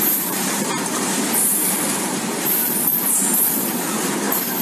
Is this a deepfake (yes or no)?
yes